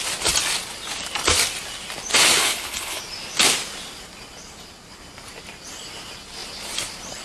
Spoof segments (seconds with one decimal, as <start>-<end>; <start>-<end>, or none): 2.4-3.0